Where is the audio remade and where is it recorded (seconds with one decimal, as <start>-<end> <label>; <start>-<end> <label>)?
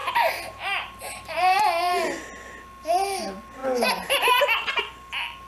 0.0-1.9 remade; 1.9-3.6 recorded; 3.6-4.8 remade; 4.8-5.5 recorded